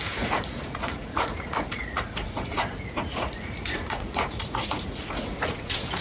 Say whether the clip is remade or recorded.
remade